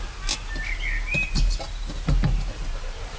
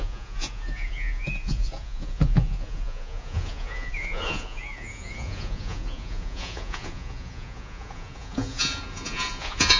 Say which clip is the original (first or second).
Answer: first